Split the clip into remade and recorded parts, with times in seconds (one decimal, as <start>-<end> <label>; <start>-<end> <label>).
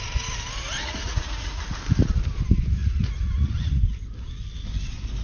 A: 0.0-0.8 recorded; 0.8-1.6 remade; 1.6-2.8 recorded; 2.8-3.8 remade; 3.8-5.2 recorded